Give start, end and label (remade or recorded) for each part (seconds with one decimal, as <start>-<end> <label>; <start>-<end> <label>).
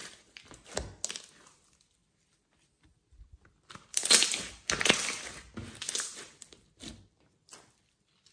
0.0-8.3 recorded